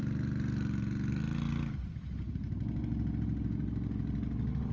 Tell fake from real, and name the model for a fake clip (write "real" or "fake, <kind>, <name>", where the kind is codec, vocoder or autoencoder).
real